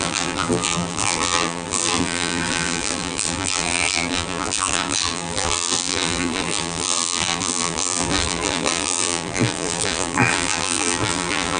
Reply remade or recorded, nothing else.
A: remade